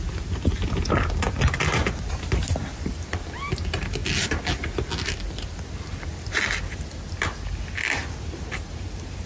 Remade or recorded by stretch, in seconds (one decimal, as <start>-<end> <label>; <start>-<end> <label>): 0.0-9.3 recorded